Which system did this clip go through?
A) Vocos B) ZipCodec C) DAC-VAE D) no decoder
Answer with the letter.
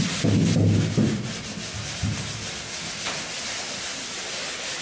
D